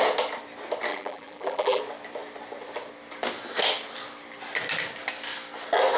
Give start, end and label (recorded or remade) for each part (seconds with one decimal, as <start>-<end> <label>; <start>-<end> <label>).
0.0-0.9 recorded; 0.9-1.8 remade; 1.8-6.0 recorded